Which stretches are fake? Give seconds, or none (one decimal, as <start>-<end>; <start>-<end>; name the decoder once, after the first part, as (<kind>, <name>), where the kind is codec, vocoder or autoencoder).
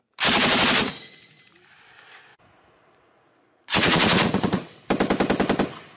0.8-1.4 (vocoder, Vocos); 2.3-4.8